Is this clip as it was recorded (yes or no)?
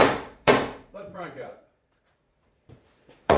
no